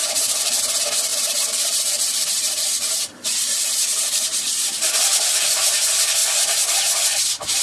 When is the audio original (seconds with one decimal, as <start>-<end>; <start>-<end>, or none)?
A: 0.6-1.1; 4.9-7.6